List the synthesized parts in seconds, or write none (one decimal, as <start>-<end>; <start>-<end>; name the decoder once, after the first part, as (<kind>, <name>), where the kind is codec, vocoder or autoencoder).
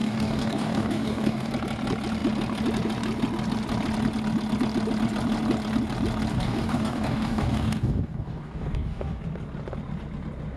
0.0-1.5 (codec, DAC); 6.3-9.2